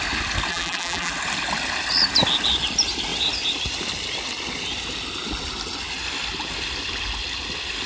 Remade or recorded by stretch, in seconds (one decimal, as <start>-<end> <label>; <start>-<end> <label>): 0.0-0.5 recorded; 0.5-1.1 remade; 1.1-7.9 recorded